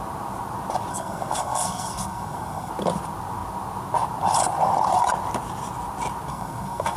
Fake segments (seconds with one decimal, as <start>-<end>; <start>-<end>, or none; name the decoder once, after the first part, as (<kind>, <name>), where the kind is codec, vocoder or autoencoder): 0.9-2.7 (codec, SNAC); 6.3-7.0